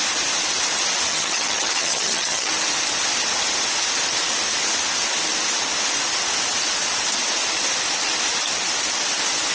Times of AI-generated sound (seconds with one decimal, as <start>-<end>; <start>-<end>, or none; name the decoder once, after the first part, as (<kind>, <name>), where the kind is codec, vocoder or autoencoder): 1.1-2.5 (vocoder, HiFi-GAN)